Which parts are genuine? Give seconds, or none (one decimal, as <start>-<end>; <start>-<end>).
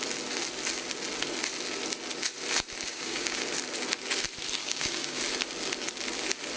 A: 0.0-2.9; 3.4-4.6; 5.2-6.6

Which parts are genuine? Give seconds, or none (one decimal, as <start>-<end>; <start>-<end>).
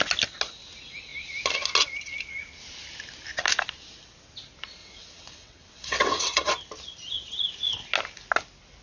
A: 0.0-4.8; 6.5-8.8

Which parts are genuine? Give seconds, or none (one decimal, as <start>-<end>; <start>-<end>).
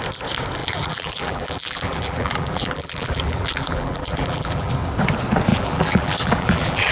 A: 0.0-0.6; 4.7-5.5